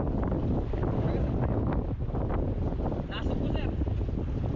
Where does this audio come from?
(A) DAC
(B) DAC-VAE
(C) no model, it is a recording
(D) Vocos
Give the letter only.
C